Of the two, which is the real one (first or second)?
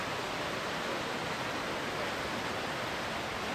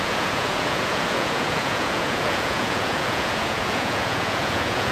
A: first